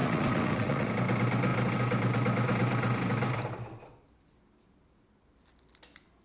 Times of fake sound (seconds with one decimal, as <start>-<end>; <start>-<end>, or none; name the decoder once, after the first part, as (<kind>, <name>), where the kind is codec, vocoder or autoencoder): 0.0-0.9 (vocoder, Vocos)